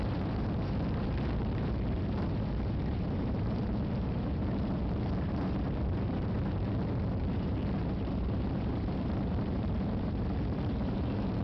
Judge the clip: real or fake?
fake